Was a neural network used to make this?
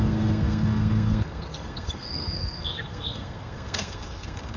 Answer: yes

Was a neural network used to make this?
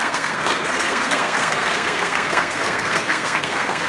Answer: yes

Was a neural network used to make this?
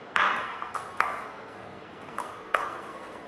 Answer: yes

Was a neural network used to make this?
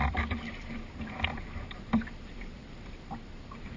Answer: yes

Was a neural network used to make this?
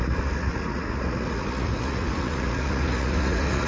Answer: yes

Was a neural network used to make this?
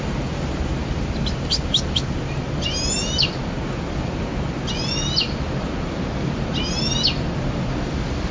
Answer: no